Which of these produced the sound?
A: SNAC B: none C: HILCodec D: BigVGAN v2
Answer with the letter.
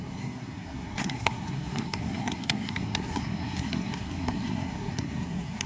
A